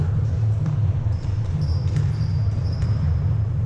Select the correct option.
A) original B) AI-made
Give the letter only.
B